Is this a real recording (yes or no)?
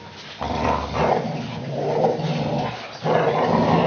yes